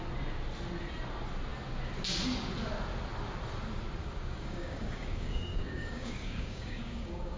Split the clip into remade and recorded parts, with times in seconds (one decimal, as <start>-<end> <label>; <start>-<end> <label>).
0.0-4.0 recorded; 4.0-7.4 remade